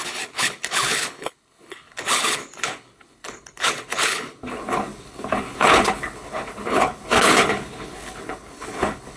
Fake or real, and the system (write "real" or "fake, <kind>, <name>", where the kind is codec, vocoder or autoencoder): fake, codec, HILCodec